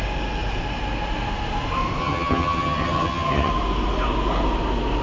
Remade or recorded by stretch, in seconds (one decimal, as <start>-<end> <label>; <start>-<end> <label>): 0.0-2.0 recorded; 2.0-3.5 remade; 3.5-5.0 recorded

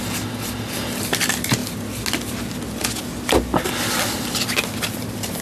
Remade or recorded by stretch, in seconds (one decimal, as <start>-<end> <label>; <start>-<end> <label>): 0.0-5.4 recorded

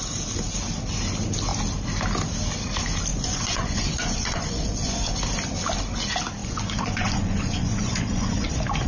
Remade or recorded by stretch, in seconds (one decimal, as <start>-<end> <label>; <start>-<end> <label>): 0.0-3.1 recorded; 3.1-5.1 remade; 5.1-6.4 recorded; 6.4-8.5 remade; 8.5-8.9 recorded

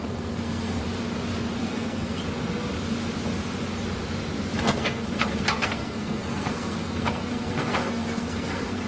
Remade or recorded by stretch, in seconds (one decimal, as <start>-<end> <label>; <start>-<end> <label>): 0.0-0.8 remade; 0.8-1.6 recorded; 1.6-2.2 remade; 2.2-4.6 recorded; 4.6-8.9 remade

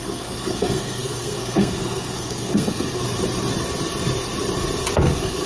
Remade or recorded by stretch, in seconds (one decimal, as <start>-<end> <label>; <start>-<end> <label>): 0.0-3.0 remade; 3.0-5.0 recorded; 5.0-5.5 remade

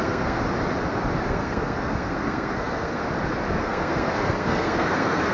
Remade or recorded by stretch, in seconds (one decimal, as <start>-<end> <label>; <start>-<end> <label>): 0.0-0.4 remade; 0.4-1.3 recorded; 1.3-3.0 remade; 3.0-3.6 recorded; 3.6-5.3 remade

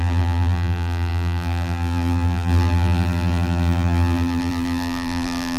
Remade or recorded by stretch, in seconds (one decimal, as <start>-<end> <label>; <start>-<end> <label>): 0.0-5.6 remade

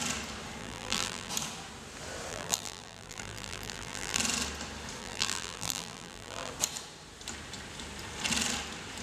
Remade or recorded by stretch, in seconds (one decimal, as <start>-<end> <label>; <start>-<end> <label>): 0.0-0.6 recorded; 0.6-1.3 remade; 1.3-2.3 recorded; 2.3-4.2 remade; 4.2-5.0 recorded; 5.0-6.5 remade; 6.5-9.0 recorded